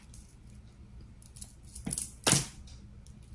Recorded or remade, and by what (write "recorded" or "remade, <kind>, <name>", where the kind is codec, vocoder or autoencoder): recorded